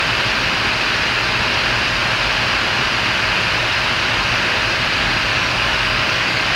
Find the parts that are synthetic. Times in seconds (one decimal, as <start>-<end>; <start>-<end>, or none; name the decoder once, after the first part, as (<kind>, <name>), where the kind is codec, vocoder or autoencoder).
5.3-6.6 (codec, DAC)